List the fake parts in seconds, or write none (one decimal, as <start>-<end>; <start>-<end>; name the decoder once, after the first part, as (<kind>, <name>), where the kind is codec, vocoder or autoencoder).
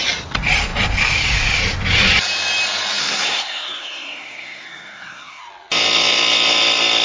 3.0-5.4 (codec, SNAC)